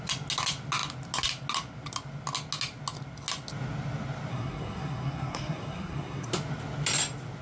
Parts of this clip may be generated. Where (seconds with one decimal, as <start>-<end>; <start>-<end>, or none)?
4.3-6.3